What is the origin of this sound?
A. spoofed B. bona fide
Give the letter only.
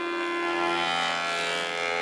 B